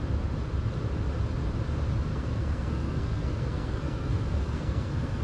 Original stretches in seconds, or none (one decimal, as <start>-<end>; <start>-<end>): 0.0-2.1